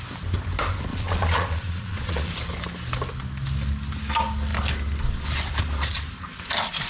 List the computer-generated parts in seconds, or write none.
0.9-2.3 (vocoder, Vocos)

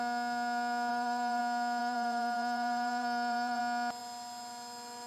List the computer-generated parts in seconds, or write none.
0.9-1.4 (vocoder, BigVGAN v2); 1.8-3.6

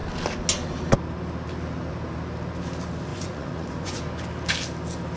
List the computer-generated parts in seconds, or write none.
3.1-4.0 (vocoder, Vocos)

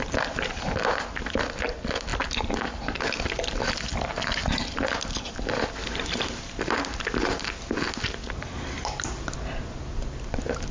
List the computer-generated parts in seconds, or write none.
none